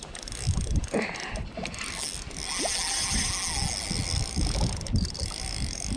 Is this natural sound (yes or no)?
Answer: yes